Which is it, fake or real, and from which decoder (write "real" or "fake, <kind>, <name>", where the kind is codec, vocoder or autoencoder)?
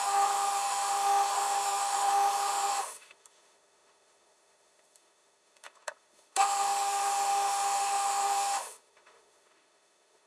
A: fake, autoencoder, DAC-VAE